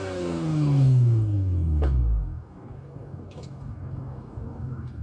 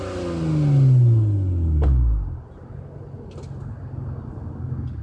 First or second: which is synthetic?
first